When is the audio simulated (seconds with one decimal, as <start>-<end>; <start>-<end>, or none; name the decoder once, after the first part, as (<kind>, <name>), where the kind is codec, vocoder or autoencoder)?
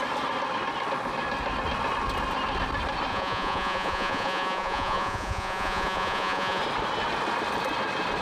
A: 3.1-6.6 (vocoder, Vocos)